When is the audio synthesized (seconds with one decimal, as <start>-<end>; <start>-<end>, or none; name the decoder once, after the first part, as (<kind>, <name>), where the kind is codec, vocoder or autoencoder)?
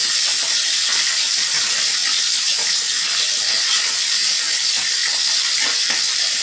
5.0-6.4 (vocoder, BigVGAN v2)